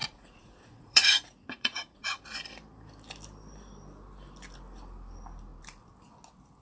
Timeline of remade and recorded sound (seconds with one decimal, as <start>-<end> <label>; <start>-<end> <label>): 0.0-2.2 remade; 2.2-6.6 recorded